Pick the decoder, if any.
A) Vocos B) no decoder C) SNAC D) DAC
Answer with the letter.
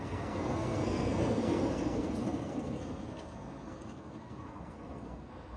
C